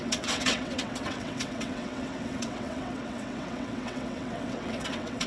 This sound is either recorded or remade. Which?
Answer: remade